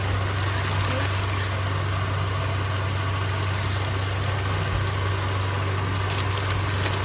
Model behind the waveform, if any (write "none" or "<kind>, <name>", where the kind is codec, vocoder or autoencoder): none